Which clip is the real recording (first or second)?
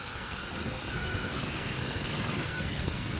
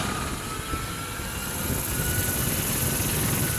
second